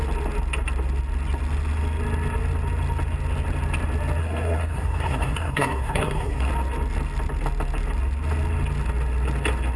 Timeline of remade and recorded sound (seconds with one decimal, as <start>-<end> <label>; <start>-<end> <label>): 0.0-4.2 recorded; 4.2-6.5 remade; 6.5-9.8 recorded